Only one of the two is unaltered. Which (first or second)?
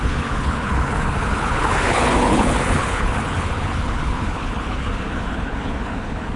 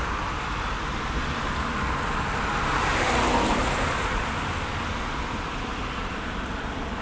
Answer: second